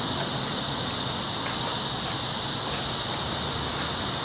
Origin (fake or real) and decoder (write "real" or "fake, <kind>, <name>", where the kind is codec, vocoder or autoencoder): real